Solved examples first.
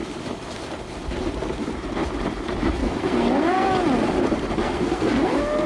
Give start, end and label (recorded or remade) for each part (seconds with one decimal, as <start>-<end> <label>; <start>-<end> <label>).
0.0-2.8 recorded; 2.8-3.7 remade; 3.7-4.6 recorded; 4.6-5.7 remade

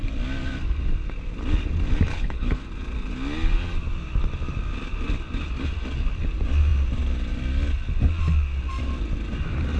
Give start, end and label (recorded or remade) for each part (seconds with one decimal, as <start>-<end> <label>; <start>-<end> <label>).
0.0-2.1 recorded; 2.1-2.6 remade; 2.6-9.8 recorded

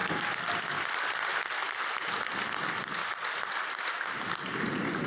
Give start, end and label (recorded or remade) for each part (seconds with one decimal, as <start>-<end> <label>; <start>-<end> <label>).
0.0-0.6 remade; 0.6-5.1 recorded

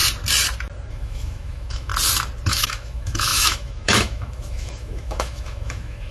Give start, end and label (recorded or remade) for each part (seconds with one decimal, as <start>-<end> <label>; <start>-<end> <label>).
0.0-0.9 recorded; 0.9-1.9 remade; 1.9-2.5 recorded; 2.5-6.1 remade

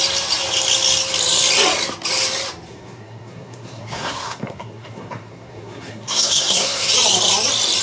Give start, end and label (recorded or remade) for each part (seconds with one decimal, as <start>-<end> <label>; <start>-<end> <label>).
0.0-2.7 recorded; 2.7-6.9 remade; 6.9-7.8 recorded

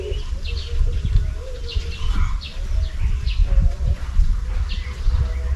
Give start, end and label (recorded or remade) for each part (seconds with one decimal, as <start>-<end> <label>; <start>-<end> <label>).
0.0-3.4 recorded; 3.4-4.7 remade; 4.7-5.6 recorded

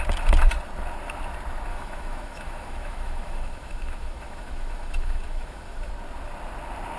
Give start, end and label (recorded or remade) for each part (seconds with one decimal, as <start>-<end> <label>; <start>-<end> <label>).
0.0-1.7 recorded; 1.7-5.9 remade; 5.9-7.0 recorded

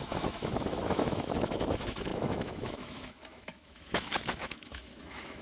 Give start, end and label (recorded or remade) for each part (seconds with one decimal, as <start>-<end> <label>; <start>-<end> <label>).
0.0-5.4 remade